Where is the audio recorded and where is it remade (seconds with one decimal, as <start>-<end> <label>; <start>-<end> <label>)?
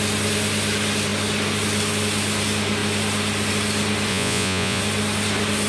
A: 0.0-4.1 recorded; 4.1-4.8 remade; 4.8-5.7 recorded